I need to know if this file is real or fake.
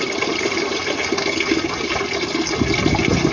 real